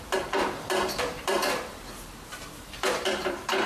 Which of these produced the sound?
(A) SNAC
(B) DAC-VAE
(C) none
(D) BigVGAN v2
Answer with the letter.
D